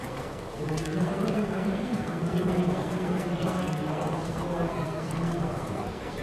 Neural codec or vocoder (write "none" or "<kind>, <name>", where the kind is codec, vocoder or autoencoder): codec, SNAC